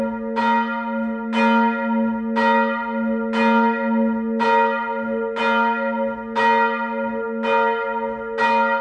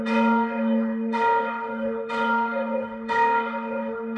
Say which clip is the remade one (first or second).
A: second